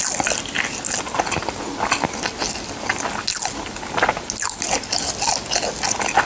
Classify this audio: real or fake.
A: real